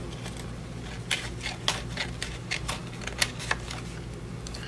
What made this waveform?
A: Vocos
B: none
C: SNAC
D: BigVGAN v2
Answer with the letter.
B